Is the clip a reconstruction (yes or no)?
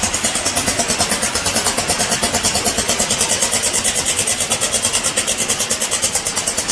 no